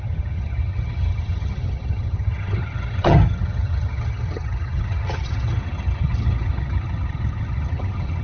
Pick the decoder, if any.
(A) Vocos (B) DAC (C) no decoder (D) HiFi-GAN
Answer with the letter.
D